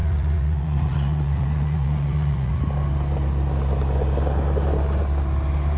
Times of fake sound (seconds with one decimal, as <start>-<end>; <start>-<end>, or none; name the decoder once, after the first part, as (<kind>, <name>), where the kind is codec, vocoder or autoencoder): 0.0-2.6 (vocoder, Vocos)